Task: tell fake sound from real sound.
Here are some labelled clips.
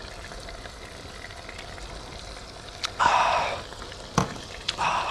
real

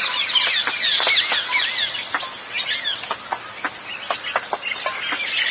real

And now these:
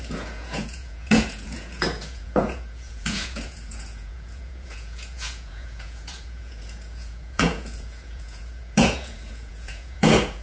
fake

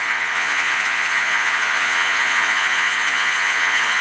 fake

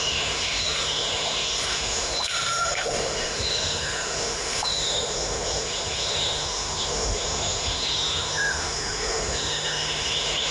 fake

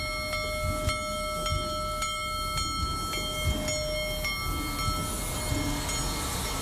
real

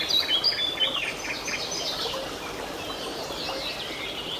real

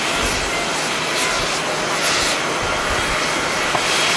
real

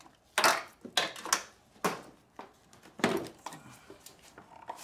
real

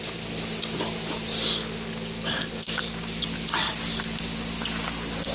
real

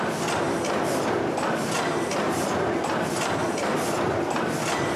real